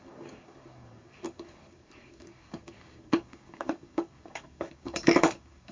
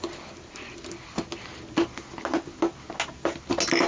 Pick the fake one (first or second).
first